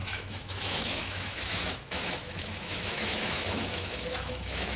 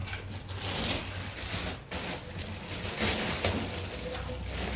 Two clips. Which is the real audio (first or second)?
second